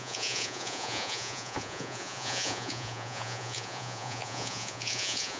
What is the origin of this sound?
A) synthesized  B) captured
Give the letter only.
A